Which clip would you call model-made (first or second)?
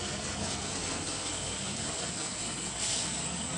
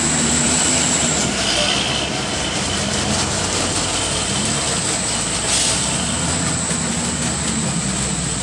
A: first